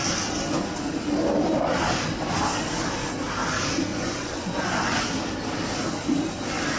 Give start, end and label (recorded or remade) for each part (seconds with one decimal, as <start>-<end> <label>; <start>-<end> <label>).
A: 0.0-3.9 recorded; 3.9-5.0 remade; 5.0-6.8 recorded